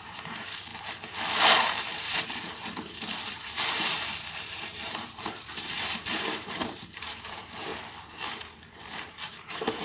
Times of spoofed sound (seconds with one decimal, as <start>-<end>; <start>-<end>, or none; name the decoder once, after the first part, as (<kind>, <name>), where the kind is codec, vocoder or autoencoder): 0.0-0.7 (vocoder, BigVGAN v2); 1.8-7.7; 8.3-9.8